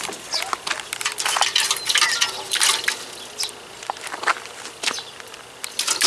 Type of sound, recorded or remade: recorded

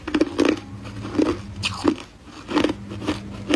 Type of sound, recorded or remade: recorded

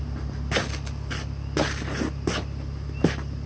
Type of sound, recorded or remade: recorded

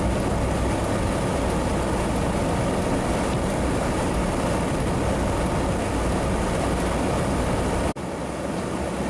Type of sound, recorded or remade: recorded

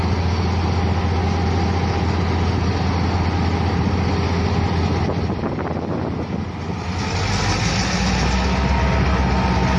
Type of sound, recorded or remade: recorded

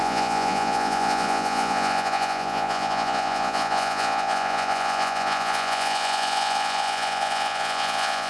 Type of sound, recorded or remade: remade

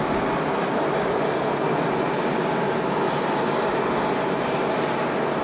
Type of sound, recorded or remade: recorded